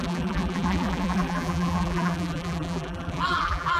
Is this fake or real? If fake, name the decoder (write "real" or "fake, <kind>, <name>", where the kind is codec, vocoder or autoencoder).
fake, vocoder, BigVGAN v2